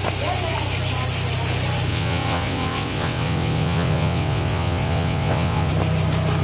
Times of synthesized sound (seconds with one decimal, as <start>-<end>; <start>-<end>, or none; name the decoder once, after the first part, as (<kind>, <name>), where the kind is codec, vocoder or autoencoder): 1.9-5.7 (vocoder, WaveNeXt)